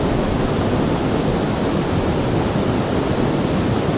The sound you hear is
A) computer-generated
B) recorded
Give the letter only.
B